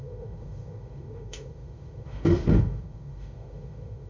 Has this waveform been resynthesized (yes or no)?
yes